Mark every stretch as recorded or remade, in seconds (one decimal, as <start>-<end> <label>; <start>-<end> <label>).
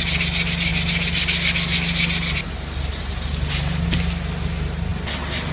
0.0-5.5 recorded